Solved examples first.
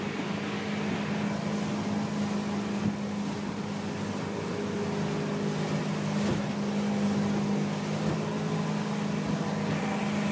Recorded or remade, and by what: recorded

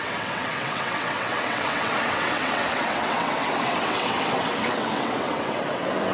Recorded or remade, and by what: remade, vocoder, WaveNeXt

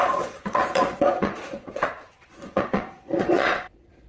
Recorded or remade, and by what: remade, vocoder, Vocos